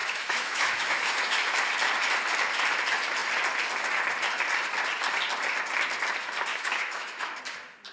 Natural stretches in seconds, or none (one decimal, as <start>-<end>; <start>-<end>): 1.6-6.5; 7.4-7.9